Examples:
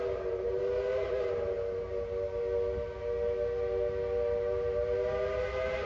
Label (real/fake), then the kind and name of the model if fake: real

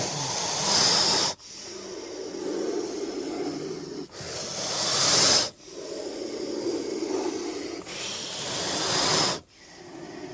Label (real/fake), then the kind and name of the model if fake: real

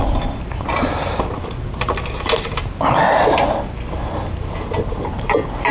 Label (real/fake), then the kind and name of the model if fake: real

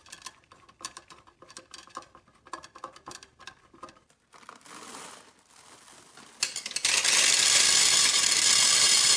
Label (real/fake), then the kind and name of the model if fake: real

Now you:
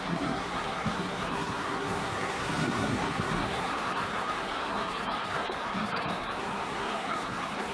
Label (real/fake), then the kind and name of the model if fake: fake, codec, SNAC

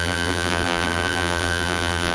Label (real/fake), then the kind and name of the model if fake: fake, vocoder, BigVGAN v2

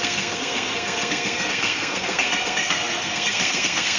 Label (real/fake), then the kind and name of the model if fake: fake, codec, SNAC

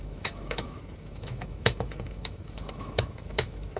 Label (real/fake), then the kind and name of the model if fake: fake, autoencoder, DAC-VAE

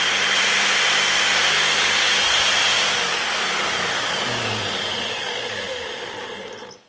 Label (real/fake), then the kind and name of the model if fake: real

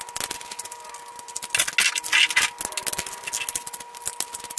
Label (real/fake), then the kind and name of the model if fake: real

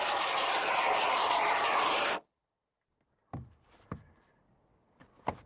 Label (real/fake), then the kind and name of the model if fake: fake, vocoder, BigVGAN v2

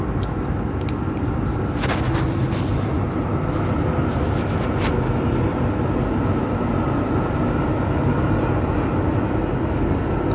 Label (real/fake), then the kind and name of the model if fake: real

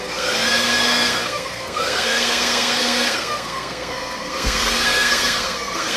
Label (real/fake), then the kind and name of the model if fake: fake, codec, SNAC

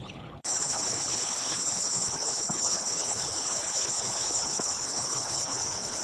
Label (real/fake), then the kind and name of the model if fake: fake, codec, HILCodec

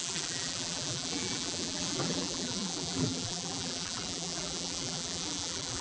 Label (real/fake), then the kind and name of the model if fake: fake, vocoder, BigVGAN v2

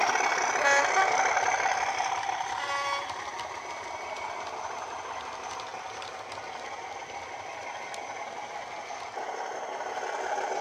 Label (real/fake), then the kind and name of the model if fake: real